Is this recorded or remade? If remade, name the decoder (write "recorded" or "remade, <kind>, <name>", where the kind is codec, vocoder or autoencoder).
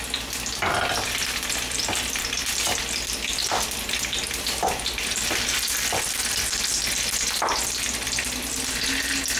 recorded